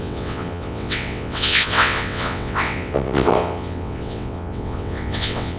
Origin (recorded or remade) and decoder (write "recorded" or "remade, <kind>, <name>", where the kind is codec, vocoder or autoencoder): remade, vocoder, WaveNeXt